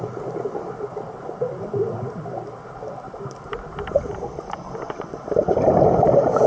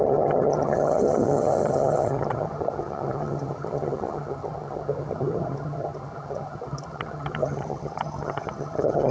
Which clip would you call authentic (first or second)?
first